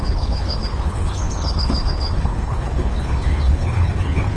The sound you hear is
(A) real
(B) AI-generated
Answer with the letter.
B